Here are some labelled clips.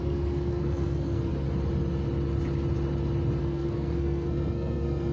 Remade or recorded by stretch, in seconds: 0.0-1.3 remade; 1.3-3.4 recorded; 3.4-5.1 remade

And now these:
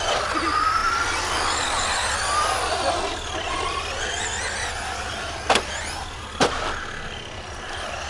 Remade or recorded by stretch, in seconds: 0.0-8.1 recorded

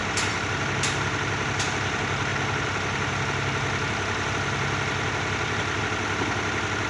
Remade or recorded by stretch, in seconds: 0.0-6.9 recorded

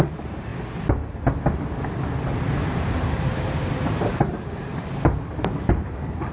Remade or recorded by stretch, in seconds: 0.0-0.5 remade; 0.5-2.4 recorded; 2.4-6.3 remade

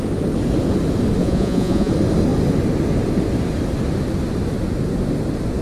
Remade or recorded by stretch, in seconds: 0.0-1.2 recorded; 1.2-1.9 remade; 1.9-5.6 recorded

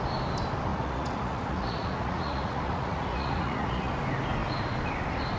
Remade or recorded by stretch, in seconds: 0.0-0.7 recorded; 0.7-3.9 remade; 3.9-5.4 recorded

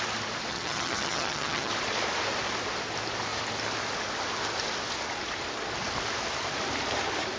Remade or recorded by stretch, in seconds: 0.0-0.5 recorded; 0.5-1.7 remade; 1.7-7.4 recorded

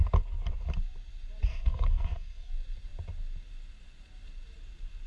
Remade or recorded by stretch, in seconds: 0.0-1.5 recorded; 1.5-2.5 remade; 2.5-5.1 recorded